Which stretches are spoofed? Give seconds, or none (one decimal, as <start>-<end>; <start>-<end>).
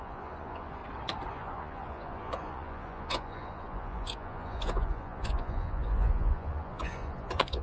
0.0-0.8; 1.3-7.6